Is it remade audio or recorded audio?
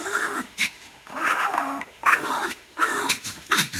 remade